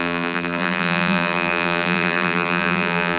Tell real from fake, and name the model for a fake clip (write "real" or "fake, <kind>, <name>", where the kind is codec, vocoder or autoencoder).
fake, vocoder, BigVGAN v2